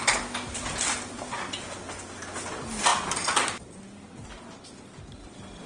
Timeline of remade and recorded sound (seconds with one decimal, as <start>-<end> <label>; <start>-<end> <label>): 0.0-5.7 recorded